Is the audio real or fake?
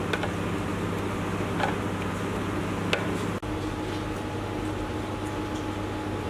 real